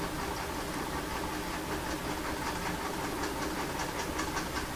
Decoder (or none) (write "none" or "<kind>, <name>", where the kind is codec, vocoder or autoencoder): none